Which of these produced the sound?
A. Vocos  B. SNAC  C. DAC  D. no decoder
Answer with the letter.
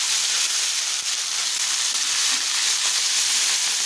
D